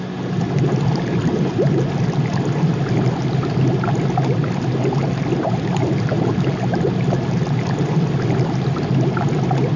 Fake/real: real